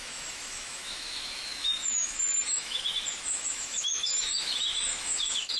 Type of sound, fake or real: fake